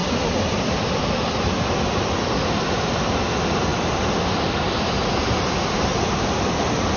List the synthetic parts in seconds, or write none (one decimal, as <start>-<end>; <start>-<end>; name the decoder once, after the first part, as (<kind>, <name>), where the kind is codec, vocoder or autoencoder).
none